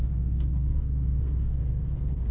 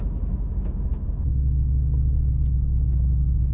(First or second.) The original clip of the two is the second